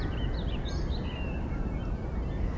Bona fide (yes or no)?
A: yes